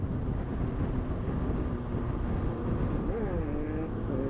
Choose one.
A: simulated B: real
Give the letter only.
B